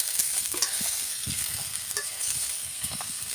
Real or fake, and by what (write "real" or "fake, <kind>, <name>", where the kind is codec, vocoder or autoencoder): fake, codec, SNAC